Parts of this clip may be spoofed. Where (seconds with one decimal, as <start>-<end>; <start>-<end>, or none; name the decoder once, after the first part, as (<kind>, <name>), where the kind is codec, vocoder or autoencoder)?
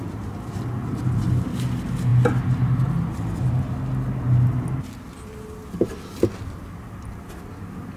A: none